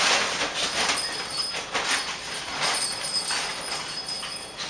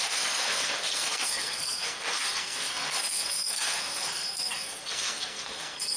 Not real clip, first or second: second